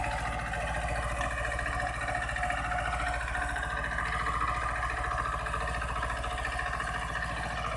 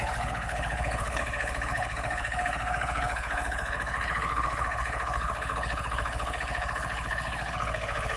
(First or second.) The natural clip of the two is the first